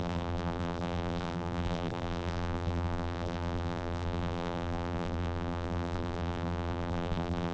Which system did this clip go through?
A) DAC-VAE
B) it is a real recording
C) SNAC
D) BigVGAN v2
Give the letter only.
D